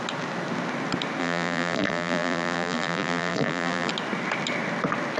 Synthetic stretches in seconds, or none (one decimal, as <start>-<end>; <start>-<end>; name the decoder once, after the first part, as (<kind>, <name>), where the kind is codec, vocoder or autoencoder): 1.2-3.9 (vocoder, BigVGAN v2)